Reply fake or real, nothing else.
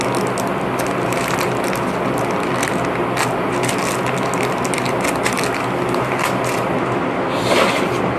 real